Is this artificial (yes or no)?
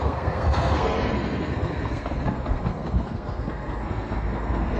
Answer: yes